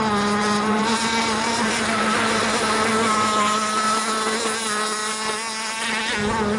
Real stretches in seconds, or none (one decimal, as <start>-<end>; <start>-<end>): 0.0-0.4; 2.9-6.6